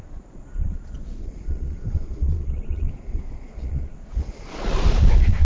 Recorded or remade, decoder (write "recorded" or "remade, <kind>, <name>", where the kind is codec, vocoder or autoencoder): remade, vocoder, Vocos